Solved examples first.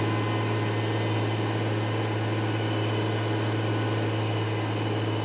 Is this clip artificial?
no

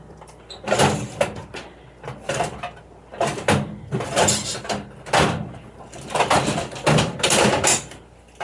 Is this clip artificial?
no